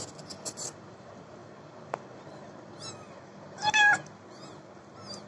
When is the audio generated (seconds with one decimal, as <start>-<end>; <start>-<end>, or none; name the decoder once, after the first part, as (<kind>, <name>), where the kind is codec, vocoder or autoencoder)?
none